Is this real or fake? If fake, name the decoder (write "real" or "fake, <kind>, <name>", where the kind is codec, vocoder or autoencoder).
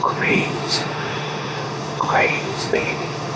fake, autoencoder, DAC-VAE